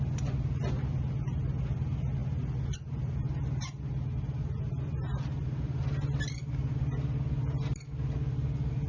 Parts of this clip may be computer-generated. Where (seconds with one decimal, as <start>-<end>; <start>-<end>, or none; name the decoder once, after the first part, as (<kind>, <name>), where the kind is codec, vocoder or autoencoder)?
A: none